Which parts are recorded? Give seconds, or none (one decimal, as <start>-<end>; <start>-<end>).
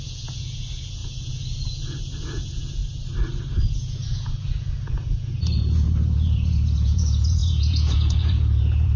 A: 2.8-3.7